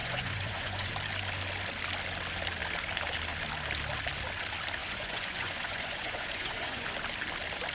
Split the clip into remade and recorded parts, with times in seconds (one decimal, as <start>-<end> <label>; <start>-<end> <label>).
0.0-0.9 remade; 0.9-4.8 recorded; 4.8-6.9 remade; 6.9-7.7 recorded